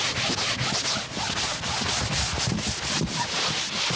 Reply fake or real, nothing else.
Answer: real